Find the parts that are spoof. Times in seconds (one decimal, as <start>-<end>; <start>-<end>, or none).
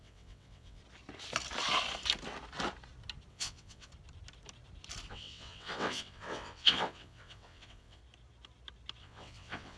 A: 0.0-0.8; 3.3-3.9; 5.1-8.0; 9.0-9.8